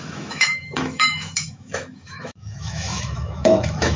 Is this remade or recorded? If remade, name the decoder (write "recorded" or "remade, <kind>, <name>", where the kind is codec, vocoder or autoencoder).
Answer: remade, autoencoder, DAC-VAE